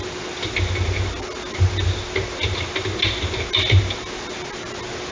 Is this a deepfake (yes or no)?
no